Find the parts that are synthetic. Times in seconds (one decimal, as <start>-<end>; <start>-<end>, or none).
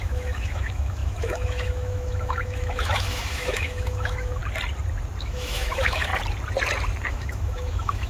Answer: 0.0-4.4; 5.2-6.1; 7.1-8.1